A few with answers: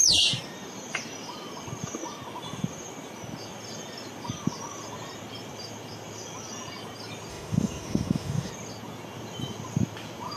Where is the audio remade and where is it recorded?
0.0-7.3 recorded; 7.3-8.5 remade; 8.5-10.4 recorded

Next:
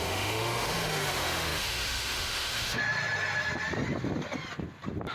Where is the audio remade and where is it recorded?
0.0-2.8 remade; 2.8-5.1 recorded

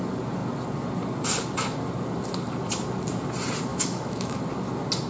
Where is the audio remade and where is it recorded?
0.0-3.7 recorded; 3.7-4.4 remade; 4.4-5.1 recorded

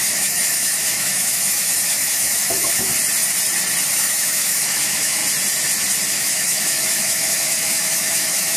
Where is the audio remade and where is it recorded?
0.0-2.9 remade; 2.9-3.9 recorded; 3.9-5.2 remade; 5.2-6.1 recorded; 6.1-8.6 remade

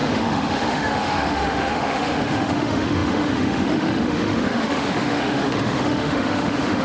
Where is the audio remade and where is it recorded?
0.0-6.8 remade

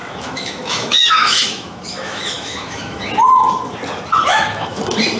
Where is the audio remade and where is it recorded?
0.0-3.0 remade; 3.0-4.3 recorded; 4.3-4.8 remade; 4.8-5.2 recorded

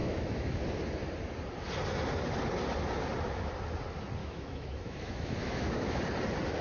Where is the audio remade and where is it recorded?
0.0-0.6 remade; 0.6-4.2 recorded; 4.2-6.0 remade; 6.0-6.6 recorded